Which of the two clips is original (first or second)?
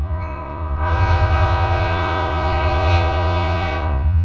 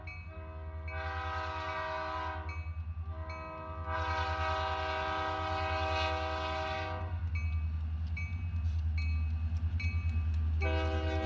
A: second